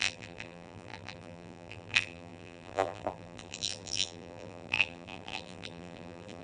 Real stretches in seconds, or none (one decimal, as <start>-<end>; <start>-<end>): none

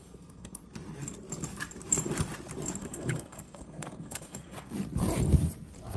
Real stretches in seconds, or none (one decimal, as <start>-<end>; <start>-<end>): 0.6-2.8; 4.7-6.0

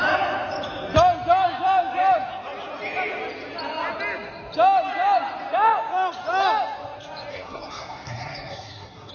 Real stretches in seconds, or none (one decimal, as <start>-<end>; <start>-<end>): 0.0-7.3

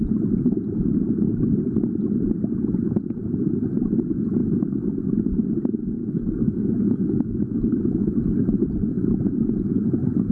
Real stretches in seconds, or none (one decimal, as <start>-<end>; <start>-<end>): 0.0-4.4; 4.9-6.0; 8.2-10.3

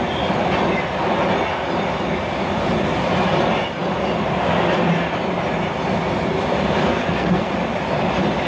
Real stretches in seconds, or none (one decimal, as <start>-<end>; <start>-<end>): 0.0-6.9; 7.5-8.5

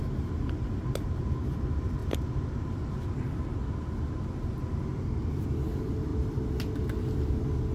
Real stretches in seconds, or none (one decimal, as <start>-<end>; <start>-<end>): 0.0-7.7

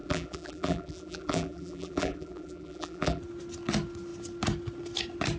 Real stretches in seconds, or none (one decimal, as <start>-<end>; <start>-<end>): 3.2-5.4

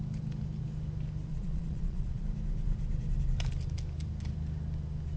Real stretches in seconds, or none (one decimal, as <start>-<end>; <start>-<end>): 0.0-1.3; 2.2-5.2